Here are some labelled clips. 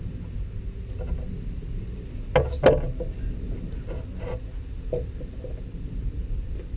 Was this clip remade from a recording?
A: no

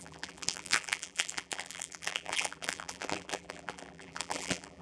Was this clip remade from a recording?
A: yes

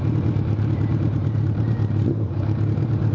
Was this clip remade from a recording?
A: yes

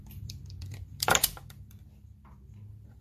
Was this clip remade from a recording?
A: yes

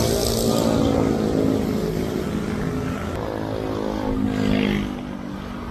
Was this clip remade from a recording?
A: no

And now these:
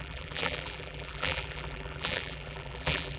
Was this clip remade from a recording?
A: yes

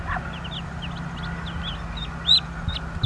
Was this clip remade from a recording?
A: no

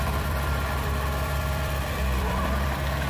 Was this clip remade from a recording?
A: yes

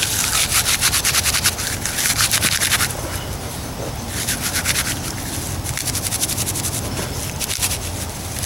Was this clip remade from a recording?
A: no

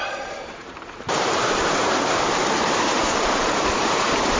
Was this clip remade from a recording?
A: yes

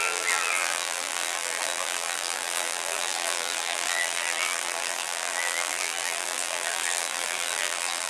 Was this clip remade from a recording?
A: yes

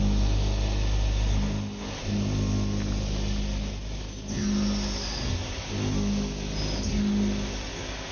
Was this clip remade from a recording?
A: no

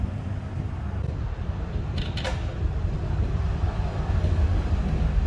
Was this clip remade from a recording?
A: yes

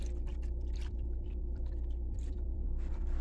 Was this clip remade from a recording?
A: yes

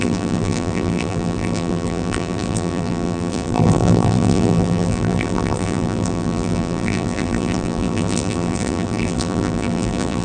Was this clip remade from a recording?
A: yes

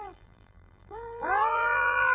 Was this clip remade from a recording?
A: yes